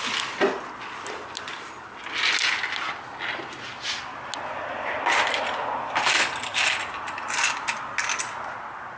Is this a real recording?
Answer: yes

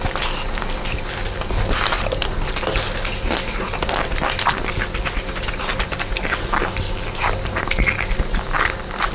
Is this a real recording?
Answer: yes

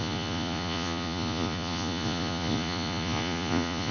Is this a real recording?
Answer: no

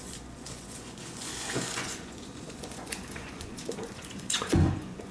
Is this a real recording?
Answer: no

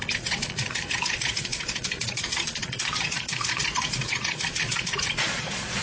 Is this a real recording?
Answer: no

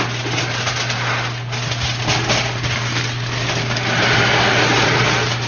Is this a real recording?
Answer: yes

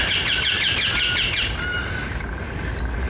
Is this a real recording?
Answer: yes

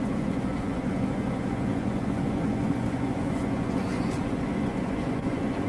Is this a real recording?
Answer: no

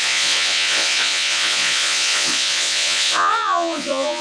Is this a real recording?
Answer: no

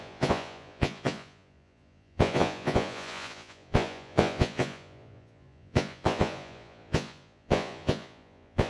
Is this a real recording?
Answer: no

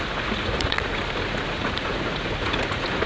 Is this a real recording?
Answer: no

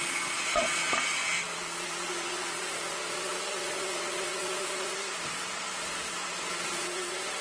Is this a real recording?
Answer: no